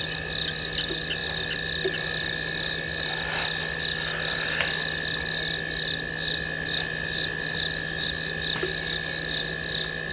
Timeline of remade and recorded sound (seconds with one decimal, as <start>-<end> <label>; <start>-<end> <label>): 0.0-10.1 recorded